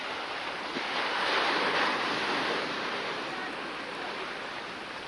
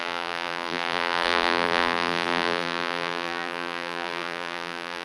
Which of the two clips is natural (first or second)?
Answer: first